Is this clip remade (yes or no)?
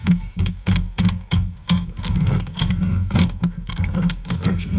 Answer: yes